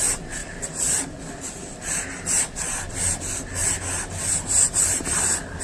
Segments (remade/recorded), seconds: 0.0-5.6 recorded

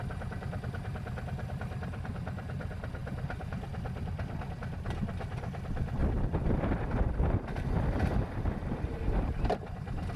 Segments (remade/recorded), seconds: 0.0-3.0 recorded; 3.0-4.6 remade; 4.6-6.0 recorded; 6.0-6.9 remade; 6.9-10.2 recorded

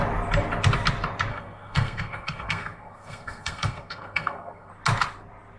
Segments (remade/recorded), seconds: 0.0-1.3 recorded; 1.3-4.7 remade; 4.7-5.6 recorded

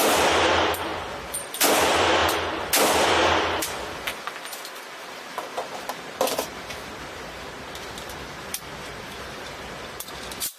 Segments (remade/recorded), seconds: 0.0-0.9 remade; 0.9-1.5 recorded; 1.5-10.6 remade

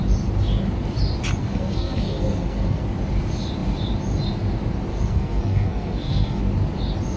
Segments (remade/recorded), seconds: 0.0-1.4 recorded; 1.4-2.8 remade; 2.8-4.9 recorded; 4.9-6.4 remade; 6.4-7.2 recorded

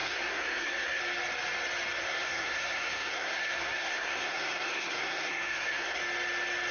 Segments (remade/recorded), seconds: 0.0-1.0 remade; 1.0-2.0 recorded; 2.0-6.0 remade; 6.0-6.7 recorded